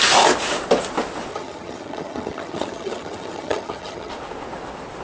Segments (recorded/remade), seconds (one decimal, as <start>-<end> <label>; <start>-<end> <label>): 0.0-1.3 recorded; 1.3-4.1 remade; 4.1-5.0 recorded